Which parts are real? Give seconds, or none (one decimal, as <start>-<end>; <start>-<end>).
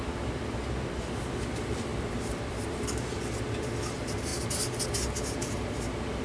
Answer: 0.0-6.2